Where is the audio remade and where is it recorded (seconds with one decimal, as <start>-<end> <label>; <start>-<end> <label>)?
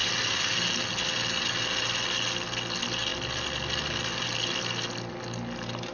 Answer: 0.0-5.9 recorded